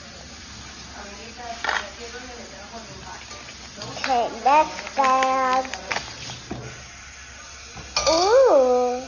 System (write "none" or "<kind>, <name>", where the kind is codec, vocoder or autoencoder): none